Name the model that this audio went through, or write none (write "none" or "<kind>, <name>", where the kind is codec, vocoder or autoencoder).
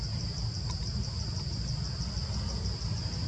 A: none